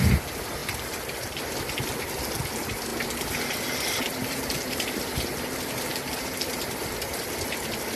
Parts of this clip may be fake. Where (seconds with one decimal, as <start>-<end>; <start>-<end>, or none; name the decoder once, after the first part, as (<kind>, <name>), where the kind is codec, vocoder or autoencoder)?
0.6-1.6 (vocoder, BigVGAN v2); 4.2-6.6